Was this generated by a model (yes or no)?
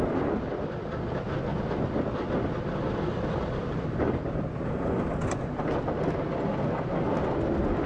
no